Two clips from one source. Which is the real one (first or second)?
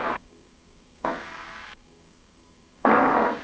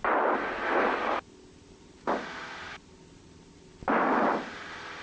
second